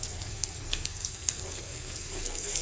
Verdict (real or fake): fake